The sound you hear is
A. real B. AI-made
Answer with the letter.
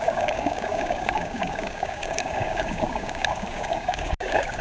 B